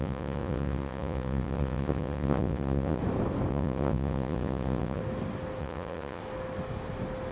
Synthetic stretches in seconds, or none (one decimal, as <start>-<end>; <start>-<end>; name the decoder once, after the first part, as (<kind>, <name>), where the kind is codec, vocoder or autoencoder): 0.0-3.0 (vocoder, Vocos); 3.5-5.0; 5.6-6.2

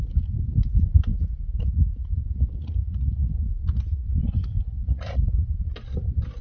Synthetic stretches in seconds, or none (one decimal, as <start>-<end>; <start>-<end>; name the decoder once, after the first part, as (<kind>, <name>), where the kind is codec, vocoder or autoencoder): 1.1-4.2 (vocoder, Vocos); 4.8-5.7

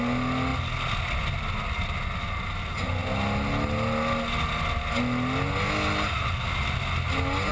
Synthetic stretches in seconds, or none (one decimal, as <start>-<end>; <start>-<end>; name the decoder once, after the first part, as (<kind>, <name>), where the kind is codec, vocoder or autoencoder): none

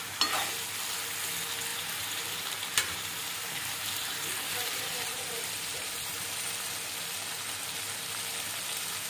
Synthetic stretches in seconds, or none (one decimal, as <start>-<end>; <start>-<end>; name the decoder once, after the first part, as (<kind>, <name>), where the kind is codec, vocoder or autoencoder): 1.7-6.0 (vocoder, BigVGAN v2)

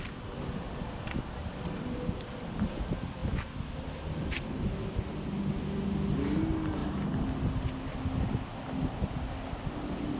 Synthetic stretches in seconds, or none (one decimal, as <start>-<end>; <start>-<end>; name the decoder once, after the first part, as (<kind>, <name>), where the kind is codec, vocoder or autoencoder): none

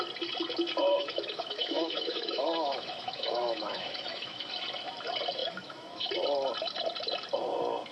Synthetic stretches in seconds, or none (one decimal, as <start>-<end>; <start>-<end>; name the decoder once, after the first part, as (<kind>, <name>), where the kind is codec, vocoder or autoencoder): 0.9-4.5 (autoencoder, DAC-VAE); 5.4-6.1